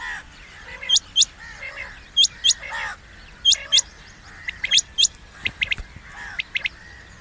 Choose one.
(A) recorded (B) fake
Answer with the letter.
B